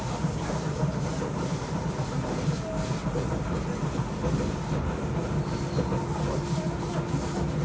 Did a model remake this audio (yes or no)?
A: no